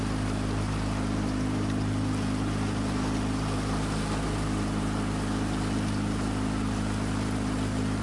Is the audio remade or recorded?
recorded